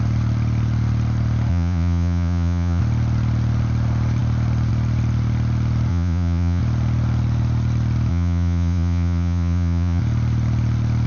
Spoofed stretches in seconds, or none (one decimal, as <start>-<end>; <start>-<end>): 1.5-2.8; 5.9-6.6; 8.1-10.0